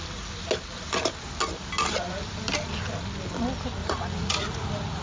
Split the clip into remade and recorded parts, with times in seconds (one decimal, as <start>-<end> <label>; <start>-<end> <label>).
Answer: 0.0-3.8 recorded; 3.8-5.0 remade